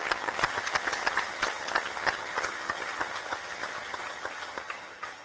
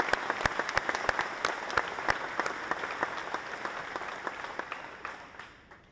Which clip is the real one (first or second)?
second